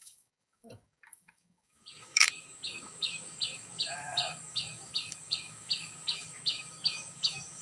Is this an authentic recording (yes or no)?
no